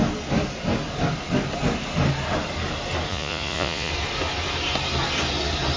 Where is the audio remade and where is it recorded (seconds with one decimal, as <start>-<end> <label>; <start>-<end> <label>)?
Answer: 0.0-3.1 recorded; 3.1-3.9 remade; 3.9-5.8 recorded